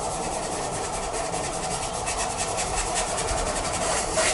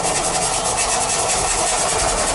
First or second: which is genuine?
second